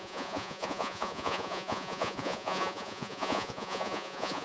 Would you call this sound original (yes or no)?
no